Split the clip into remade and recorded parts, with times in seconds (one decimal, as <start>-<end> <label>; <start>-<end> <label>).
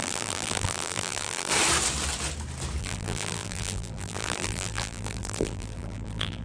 0.0-1.5 remade; 1.5-2.8 recorded; 2.8-6.4 remade